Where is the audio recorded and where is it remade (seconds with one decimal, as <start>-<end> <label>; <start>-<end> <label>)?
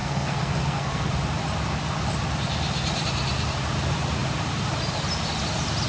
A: 0.0-1.1 remade; 1.1-5.9 recorded